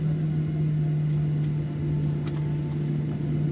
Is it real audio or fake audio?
real